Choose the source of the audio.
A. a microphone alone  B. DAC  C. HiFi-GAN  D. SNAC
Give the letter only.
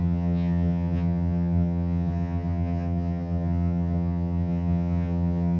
C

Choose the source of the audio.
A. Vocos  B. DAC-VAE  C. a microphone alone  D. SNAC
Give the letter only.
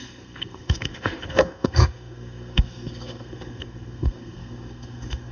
D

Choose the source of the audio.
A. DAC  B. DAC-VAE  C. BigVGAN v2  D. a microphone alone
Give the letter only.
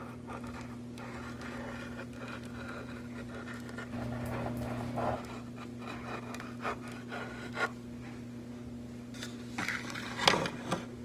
D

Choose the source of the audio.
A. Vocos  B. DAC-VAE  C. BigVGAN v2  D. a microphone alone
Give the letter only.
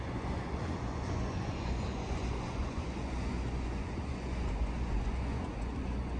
A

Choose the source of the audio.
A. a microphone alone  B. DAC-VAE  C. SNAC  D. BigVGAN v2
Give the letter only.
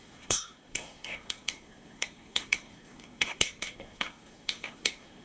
C